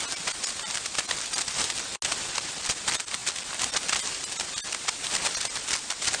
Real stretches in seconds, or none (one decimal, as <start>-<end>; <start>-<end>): 0.0-6.2